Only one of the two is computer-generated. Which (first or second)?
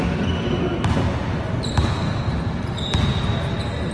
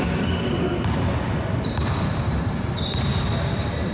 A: second